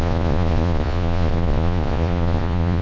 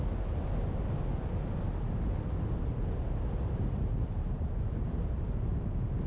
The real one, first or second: second